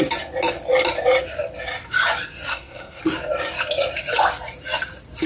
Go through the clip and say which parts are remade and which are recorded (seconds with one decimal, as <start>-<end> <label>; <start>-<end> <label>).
0.0-2.5 recorded; 2.5-3.0 remade; 3.0-5.3 recorded